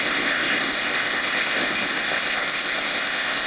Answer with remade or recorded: remade